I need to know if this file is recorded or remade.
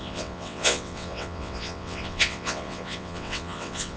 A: remade